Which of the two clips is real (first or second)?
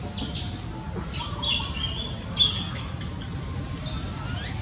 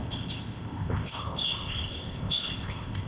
first